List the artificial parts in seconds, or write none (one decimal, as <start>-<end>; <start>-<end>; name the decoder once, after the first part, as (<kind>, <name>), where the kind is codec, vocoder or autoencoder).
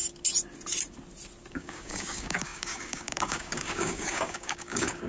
1.5-5.1 (codec, DAC)